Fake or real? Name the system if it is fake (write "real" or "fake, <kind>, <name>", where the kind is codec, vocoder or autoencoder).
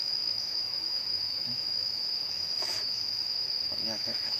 fake, autoencoder, DAC-VAE